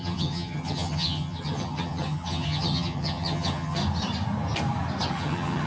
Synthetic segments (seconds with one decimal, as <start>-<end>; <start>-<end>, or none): 0.0-3.8; 5.1-5.7